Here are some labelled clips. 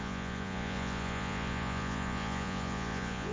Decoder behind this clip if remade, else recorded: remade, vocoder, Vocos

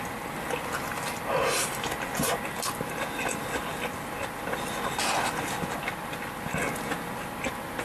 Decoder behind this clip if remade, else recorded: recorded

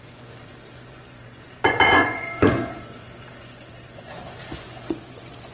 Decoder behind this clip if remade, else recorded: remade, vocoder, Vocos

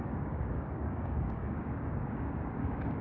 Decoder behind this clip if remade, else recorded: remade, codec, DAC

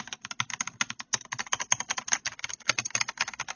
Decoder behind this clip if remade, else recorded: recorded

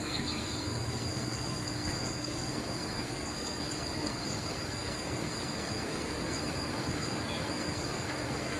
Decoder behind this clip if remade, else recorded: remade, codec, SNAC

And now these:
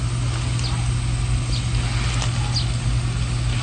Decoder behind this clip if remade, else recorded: recorded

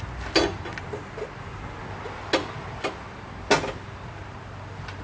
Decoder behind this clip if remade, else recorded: recorded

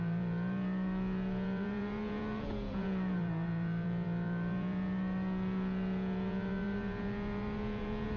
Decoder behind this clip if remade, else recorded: remade, vocoder, Vocos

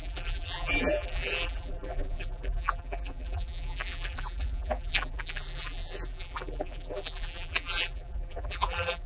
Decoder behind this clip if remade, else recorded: remade, vocoder, BigVGAN v2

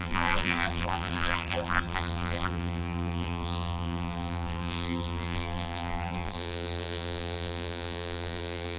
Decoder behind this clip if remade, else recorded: remade, vocoder, BigVGAN v2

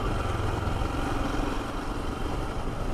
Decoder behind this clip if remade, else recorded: recorded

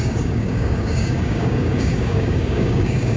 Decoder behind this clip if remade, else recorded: remade, codec, DAC